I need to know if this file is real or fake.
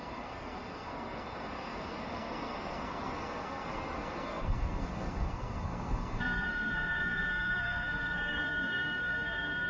fake